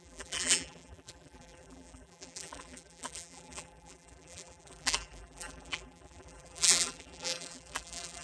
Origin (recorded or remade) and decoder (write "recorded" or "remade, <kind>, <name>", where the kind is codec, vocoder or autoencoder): remade, vocoder, BigVGAN v2